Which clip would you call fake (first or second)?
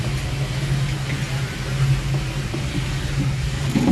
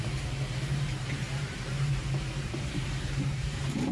second